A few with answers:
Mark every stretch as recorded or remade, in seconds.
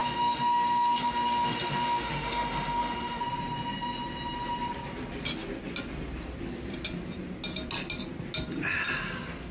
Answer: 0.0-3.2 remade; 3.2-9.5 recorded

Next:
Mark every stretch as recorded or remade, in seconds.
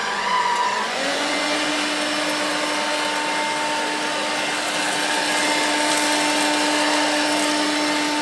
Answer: 0.0-1.7 remade; 1.7-8.2 recorded